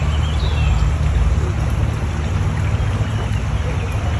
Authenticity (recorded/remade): recorded